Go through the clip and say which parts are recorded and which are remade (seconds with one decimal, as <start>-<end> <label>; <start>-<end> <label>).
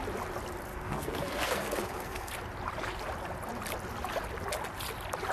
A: 0.0-0.7 recorded; 0.7-2.3 remade; 2.3-5.3 recorded